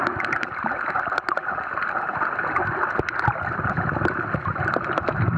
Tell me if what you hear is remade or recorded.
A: recorded